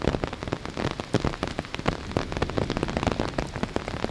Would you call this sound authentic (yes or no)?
yes